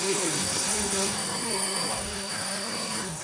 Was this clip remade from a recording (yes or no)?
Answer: yes